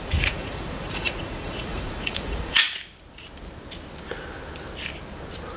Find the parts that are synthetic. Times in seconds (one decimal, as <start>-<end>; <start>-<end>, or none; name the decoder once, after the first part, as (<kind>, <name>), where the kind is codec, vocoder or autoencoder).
0.0-2.6 (vocoder, Vocos)